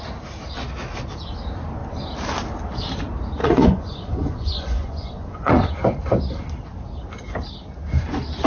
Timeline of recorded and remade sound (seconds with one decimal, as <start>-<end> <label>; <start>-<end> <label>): 0.0-3.4 recorded; 3.4-5.7 remade; 5.7-8.5 recorded